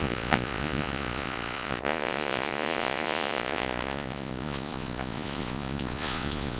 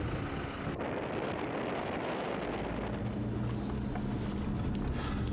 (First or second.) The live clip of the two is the second